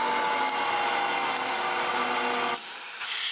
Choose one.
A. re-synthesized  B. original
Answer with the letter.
B